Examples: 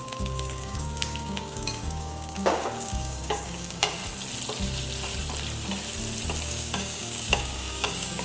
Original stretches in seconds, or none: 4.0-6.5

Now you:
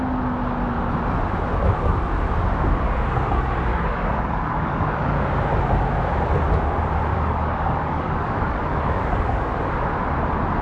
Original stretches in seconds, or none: 0.0-3.7; 5.2-7.1; 9.7-10.6

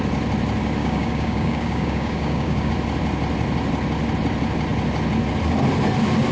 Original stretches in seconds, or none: 0.0-0.8; 2.7-6.3

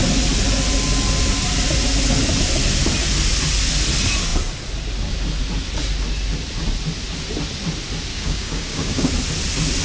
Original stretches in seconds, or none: 0.0-8.1; 9.1-9.8

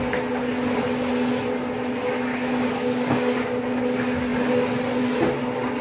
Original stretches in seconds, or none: 0.0-2.3; 3.6-5.8